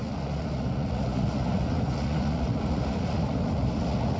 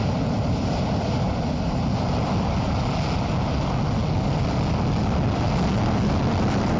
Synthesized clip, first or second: first